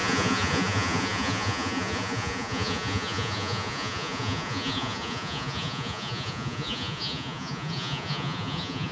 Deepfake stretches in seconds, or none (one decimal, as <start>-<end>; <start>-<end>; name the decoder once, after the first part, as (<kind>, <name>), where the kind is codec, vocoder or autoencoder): 0.0-8.9 (vocoder, Vocos)